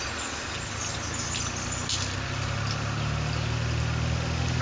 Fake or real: real